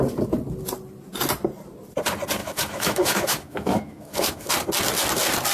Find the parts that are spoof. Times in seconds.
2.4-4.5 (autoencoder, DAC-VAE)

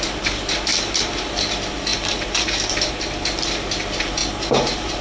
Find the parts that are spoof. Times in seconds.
1.9-2.9 (vocoder, BigVGAN v2); 4.2-5.0

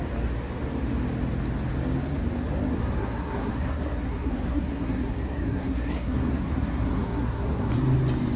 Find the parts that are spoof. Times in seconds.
2.7-7.7 (codec, SNAC)

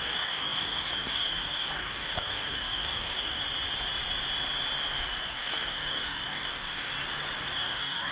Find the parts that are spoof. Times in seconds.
0.0-3.4 (codec, DAC); 5.2-6.9; 7.5-8.1

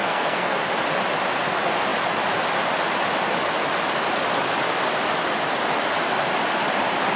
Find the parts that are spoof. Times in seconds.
0.0-0.6 (codec, SNAC)

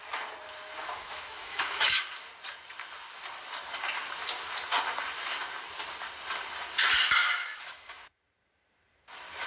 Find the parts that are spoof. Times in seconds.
0.8-2.0 (autoencoder, DAC-VAE); 7.2-8.2